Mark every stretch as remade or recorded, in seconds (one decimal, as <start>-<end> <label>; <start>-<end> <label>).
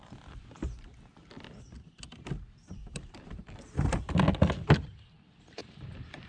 0.0-2.8 recorded; 2.8-4.1 remade; 4.1-5.6 recorded; 5.6-6.3 remade